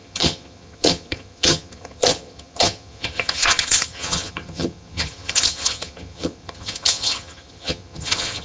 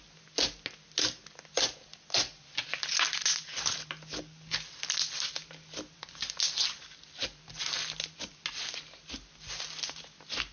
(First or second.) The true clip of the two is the second